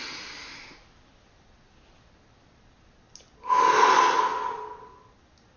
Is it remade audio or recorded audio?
recorded